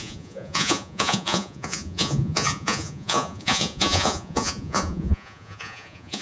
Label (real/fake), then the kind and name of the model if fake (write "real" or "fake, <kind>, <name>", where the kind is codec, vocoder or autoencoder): fake, vocoder, Vocos